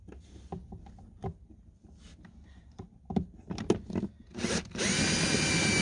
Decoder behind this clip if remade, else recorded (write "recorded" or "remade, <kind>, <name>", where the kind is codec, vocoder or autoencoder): recorded